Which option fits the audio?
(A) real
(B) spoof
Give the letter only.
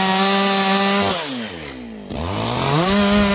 A